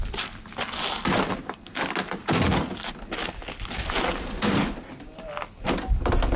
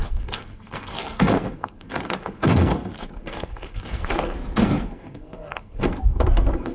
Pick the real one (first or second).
first